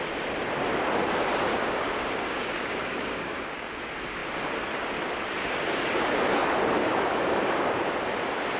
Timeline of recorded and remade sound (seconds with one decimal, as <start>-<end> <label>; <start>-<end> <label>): 0.0-1.5 recorded; 1.5-3.8 remade; 3.8-6.8 recorded; 6.8-7.9 remade; 7.9-8.6 recorded